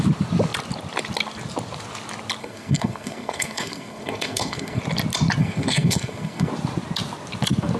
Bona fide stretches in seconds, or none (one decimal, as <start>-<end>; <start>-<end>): 0.0-2.4; 4.8-5.4; 6.5-7.8